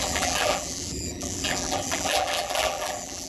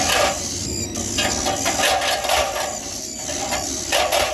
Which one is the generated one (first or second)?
first